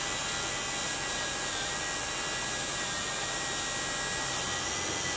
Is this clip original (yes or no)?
yes